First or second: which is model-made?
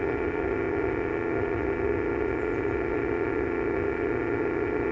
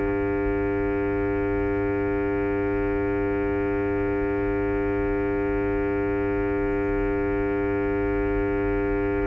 first